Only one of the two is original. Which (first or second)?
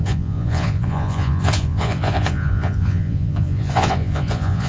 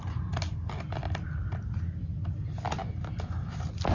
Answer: second